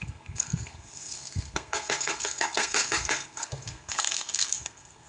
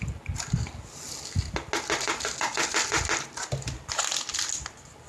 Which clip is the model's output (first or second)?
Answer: first